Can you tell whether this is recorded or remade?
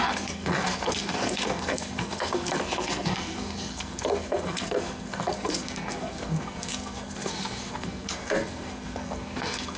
remade